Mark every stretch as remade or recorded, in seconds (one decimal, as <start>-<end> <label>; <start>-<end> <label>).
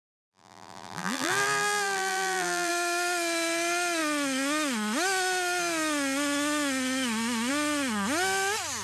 0.0-2.7 remade; 2.7-8.8 recorded